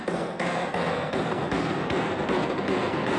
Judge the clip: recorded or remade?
remade